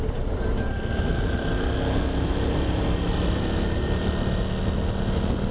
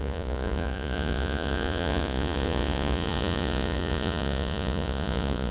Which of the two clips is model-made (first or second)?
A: second